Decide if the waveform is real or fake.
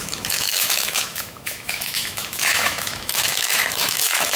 fake